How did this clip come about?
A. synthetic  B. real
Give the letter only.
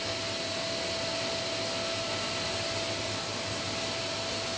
B